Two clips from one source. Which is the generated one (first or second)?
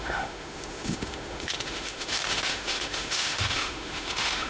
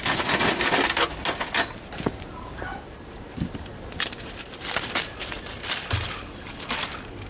first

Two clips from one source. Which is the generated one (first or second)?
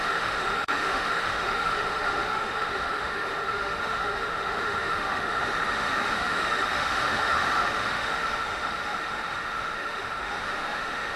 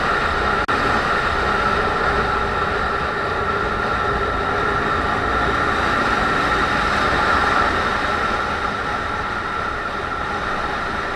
first